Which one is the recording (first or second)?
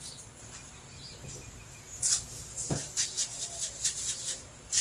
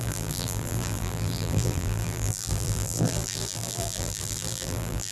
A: first